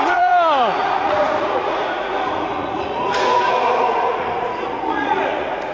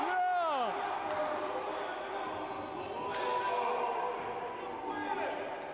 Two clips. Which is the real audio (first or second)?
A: second